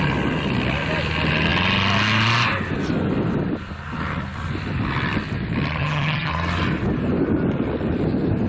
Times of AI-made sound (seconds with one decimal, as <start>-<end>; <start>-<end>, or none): 5.8-6.3